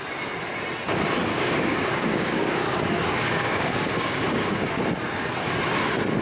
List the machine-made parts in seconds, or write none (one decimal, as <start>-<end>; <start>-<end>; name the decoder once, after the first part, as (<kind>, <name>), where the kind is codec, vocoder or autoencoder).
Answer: 1.3-4.7 (codec, DAC)